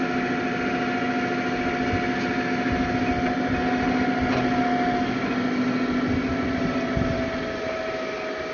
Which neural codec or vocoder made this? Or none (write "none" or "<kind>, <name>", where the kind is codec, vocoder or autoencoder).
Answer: none